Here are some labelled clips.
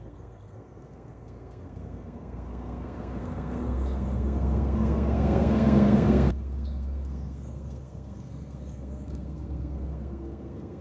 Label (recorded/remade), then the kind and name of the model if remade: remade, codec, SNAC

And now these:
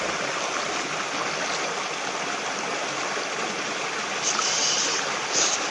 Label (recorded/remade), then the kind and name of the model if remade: recorded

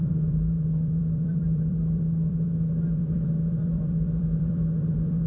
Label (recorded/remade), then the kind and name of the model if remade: remade, vocoder, BigVGAN v2